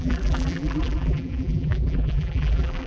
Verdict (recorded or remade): remade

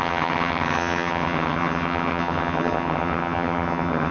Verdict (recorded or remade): remade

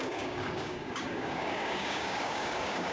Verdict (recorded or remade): remade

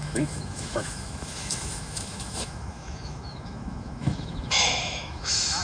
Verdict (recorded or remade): remade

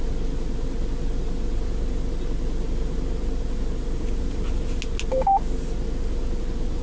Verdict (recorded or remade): recorded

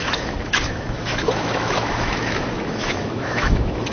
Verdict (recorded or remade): remade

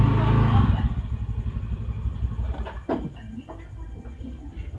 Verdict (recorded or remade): recorded